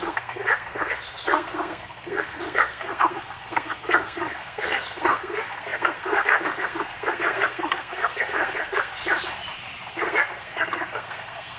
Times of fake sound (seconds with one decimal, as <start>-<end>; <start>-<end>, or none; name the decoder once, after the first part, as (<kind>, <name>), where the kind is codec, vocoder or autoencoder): 0.0-9.0 (codec, SNAC); 9.9-11.6